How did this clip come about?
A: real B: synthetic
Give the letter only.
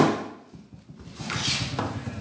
A